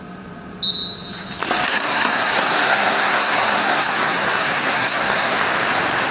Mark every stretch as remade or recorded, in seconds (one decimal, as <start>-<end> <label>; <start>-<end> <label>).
0.0-1.7 recorded; 1.7-5.4 remade; 5.4-6.1 recorded